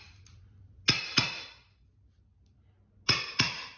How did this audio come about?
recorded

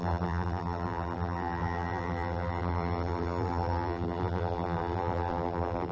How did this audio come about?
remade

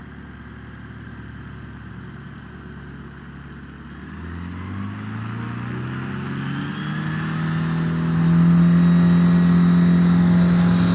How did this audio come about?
recorded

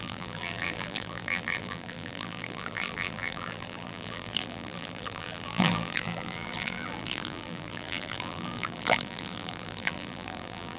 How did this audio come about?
remade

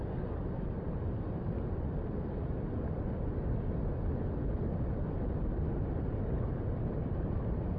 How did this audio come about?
recorded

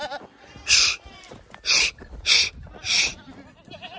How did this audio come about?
remade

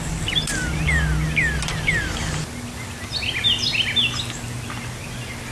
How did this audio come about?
recorded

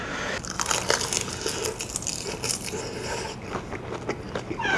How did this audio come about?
recorded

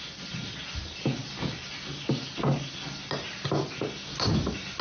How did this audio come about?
recorded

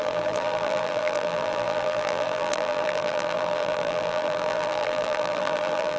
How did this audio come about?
remade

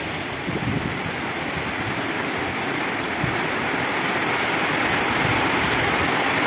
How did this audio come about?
recorded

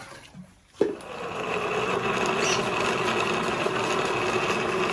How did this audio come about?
recorded